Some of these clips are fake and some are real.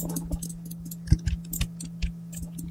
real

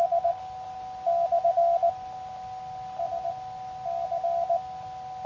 real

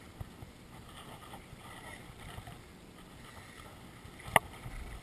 real